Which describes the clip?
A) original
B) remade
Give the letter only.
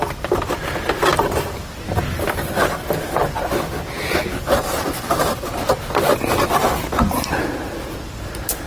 A